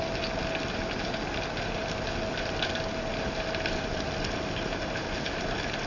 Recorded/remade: recorded